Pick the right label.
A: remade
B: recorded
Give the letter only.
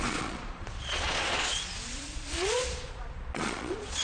A